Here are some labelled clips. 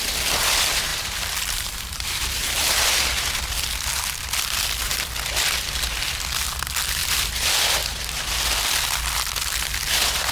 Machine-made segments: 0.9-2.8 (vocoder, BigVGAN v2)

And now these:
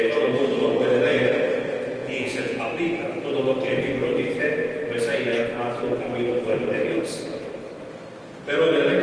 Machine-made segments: 2.0-2.6 (vocoder, Vocos)